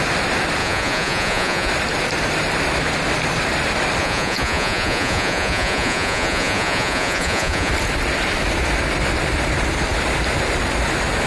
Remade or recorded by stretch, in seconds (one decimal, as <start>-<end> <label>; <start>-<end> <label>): 0.0-0.6 recorded; 0.6-1.7 remade; 1.7-4.0 recorded; 4.0-7.7 remade; 7.7-11.3 recorded